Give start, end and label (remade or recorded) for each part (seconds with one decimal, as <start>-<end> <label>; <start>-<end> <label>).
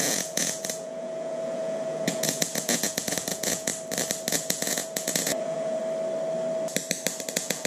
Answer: 0.0-3.7 remade; 3.7-4.3 recorded; 4.3-5.8 remade; 5.8-7.3 recorded; 7.3-7.7 remade